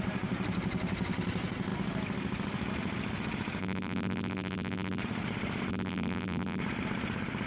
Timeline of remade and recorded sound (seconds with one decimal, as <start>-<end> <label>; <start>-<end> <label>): 0.0-3.6 recorded; 3.6-5.0 remade; 5.0-5.7 recorded; 5.7-6.6 remade; 6.6-7.5 recorded